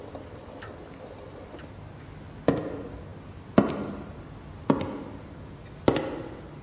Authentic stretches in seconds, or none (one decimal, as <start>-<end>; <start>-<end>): 0.0-6.6